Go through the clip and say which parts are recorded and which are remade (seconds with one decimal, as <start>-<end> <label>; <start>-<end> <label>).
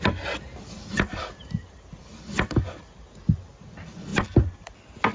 0.0-5.1 recorded